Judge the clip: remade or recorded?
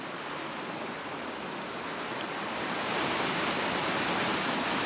recorded